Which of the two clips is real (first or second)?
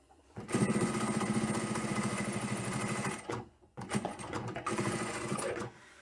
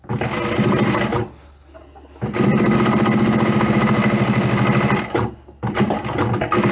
second